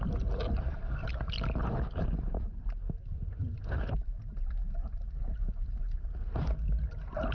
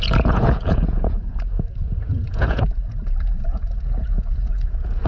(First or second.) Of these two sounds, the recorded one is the first